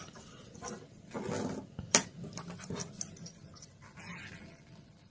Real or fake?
real